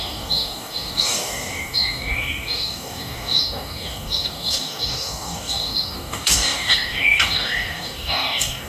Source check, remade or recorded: remade